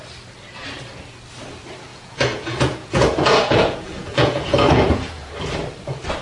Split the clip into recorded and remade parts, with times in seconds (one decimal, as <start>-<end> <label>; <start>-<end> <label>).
0.0-1.9 recorded; 1.9-5.3 remade; 5.3-6.2 recorded